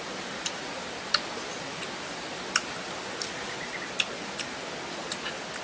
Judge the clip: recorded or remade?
recorded